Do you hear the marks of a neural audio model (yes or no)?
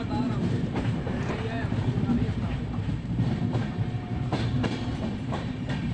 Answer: yes